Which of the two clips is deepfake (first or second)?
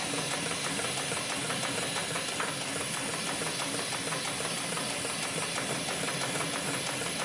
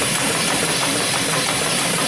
second